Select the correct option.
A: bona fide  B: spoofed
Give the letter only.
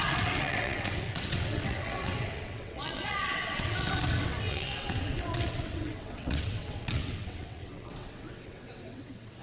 B